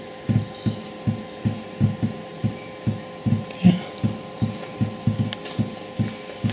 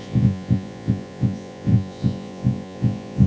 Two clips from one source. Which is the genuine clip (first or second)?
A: first